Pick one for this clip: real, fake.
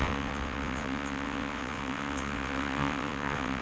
fake